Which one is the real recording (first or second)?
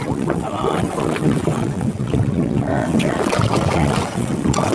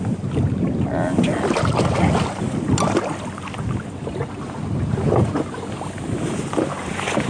second